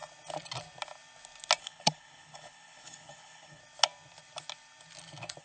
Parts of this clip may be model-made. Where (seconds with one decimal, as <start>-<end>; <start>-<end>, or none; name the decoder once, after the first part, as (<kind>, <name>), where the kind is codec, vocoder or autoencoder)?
1.6-3.6 (codec, HILCodec)